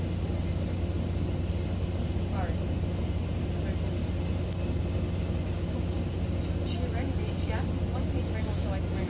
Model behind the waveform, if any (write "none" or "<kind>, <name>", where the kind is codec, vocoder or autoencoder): none